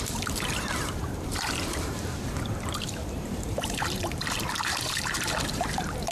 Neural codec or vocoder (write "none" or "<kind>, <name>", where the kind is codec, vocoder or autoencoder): vocoder, BigVGAN v2